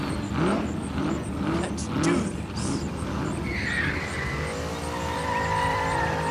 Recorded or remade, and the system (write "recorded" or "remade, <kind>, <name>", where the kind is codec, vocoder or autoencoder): recorded